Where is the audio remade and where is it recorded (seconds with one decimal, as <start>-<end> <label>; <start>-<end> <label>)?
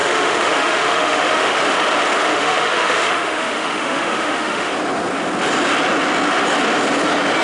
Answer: 0.0-1.6 remade; 1.6-2.3 recorded; 2.3-4.7 remade; 4.7-7.4 recorded